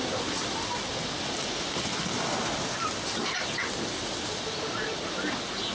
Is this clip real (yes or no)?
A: yes